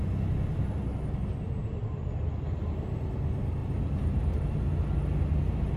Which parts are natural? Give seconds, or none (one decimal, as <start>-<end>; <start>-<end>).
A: 0.0-1.5; 2.0-3.6; 4.6-5.8